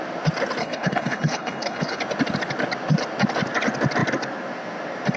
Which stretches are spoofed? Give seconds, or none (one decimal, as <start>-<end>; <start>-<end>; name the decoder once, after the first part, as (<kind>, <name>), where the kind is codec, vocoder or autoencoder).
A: 0.6-2.0 (codec, HILCodec)